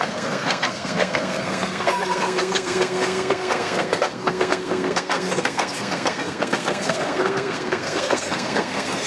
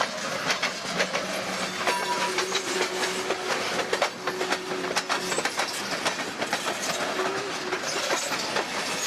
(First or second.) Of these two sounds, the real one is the second